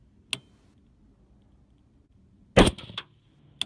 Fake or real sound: real